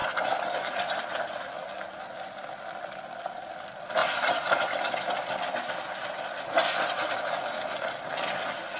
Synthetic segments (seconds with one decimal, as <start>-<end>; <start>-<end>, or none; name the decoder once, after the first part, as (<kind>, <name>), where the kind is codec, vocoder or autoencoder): none